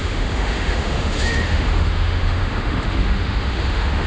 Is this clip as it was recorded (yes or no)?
no